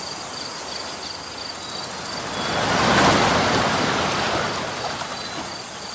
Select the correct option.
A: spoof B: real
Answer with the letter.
B